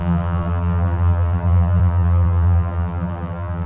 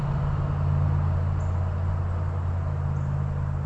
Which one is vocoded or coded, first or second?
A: first